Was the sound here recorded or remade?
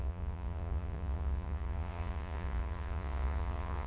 remade